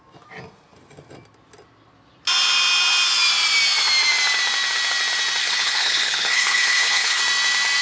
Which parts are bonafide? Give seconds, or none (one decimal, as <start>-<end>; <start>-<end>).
0.0-5.4; 7.2-7.8